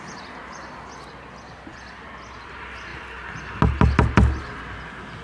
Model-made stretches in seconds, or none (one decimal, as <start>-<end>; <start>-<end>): none